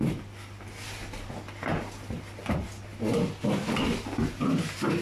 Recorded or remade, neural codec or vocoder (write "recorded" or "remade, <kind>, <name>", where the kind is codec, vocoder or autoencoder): recorded